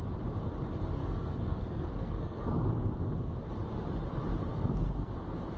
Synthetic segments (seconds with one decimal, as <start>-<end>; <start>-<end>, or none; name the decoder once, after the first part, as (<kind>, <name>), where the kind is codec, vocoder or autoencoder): 1.0-2.6 (codec, SNAC); 4.5-5.1